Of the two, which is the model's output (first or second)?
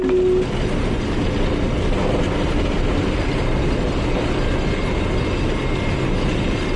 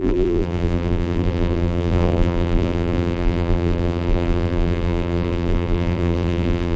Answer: second